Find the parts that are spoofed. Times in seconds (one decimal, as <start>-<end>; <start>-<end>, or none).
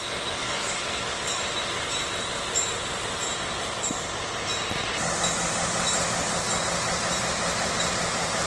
0.4-1.4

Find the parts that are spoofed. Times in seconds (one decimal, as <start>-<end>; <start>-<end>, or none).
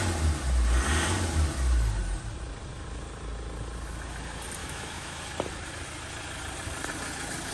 4.6-5.3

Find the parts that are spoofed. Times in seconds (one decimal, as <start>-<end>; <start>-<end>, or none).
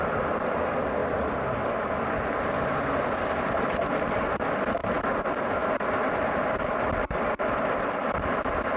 none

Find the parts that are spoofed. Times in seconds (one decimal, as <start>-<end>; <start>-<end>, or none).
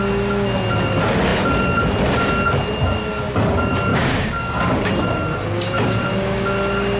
3.9-4.9